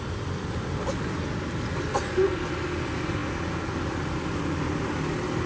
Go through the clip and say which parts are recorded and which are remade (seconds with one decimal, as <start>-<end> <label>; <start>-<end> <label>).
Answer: 0.0-5.5 recorded

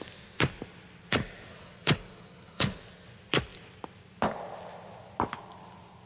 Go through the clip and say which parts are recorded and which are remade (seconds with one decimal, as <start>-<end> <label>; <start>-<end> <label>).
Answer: 0.0-1.5 recorded; 1.5-2.8 remade; 2.8-6.1 recorded